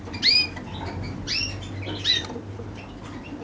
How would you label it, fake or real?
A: real